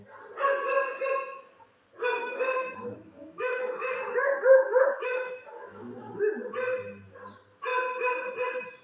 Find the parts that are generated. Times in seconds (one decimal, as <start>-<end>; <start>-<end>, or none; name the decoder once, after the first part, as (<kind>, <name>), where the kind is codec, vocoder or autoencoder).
2.2-6.2 (autoencoder, DAC-VAE)